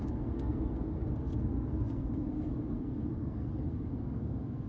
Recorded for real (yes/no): no